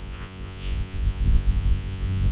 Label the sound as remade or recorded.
remade